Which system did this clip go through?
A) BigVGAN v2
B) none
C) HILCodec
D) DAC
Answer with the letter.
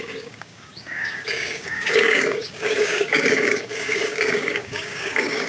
D